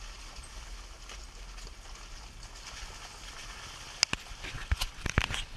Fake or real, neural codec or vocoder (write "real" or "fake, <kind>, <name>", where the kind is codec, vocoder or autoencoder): real